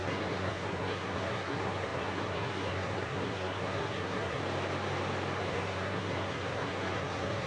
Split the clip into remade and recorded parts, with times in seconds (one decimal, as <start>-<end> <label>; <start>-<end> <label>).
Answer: 0.0-4.4 remade; 4.4-5.4 recorded; 5.4-7.5 remade